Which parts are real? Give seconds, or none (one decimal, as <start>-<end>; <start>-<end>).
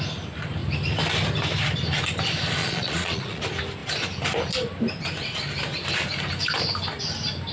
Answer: 0.0-2.6; 3.4-7.5